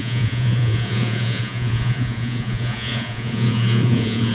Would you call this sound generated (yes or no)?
yes